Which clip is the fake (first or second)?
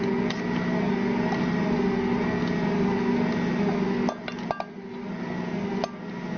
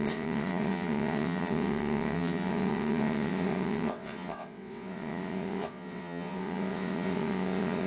second